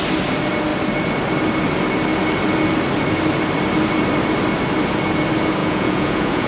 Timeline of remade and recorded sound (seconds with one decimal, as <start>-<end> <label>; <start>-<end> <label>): 0.0-5.6 recorded; 5.6-6.5 remade